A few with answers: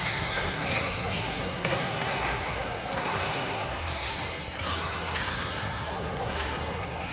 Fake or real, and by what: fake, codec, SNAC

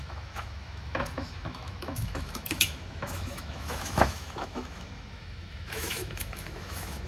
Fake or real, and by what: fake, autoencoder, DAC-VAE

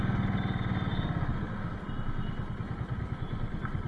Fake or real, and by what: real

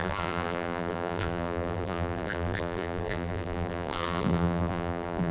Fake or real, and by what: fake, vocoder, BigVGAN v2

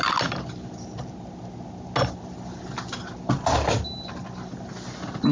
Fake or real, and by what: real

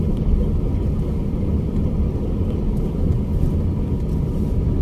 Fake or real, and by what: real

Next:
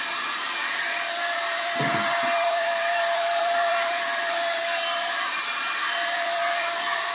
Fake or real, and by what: fake, vocoder, BigVGAN v2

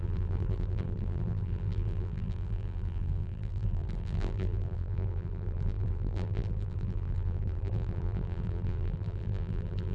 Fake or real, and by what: fake, vocoder, BigVGAN v2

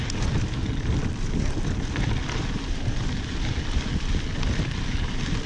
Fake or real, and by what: real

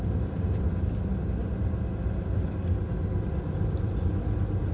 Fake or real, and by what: real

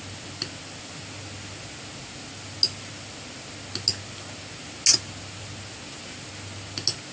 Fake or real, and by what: real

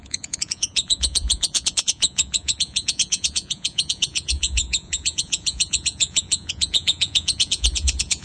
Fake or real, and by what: fake, vocoder, Vocos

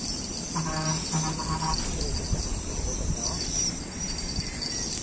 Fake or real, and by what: real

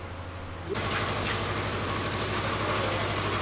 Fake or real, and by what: real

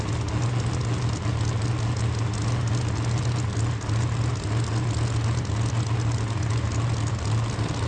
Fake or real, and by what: real